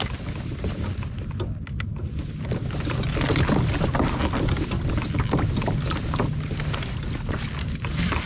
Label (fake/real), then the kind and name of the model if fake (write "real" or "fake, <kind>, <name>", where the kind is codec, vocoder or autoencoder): real